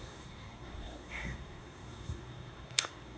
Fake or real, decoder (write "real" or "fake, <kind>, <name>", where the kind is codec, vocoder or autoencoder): fake, codec, SNAC